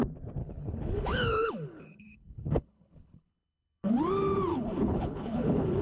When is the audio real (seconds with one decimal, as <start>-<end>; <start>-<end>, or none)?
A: 0.0-0.4; 3.9-4.5